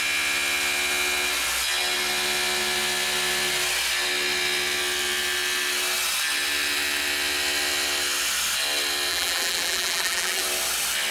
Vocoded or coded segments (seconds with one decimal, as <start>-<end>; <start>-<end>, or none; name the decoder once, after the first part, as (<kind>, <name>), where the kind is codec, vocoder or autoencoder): 9.1-10.4 (vocoder, BigVGAN v2)